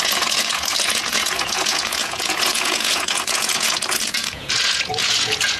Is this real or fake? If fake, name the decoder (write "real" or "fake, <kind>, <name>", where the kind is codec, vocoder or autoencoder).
fake, vocoder, Vocos